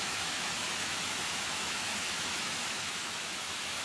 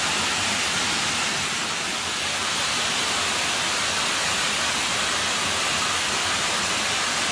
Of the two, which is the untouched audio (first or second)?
second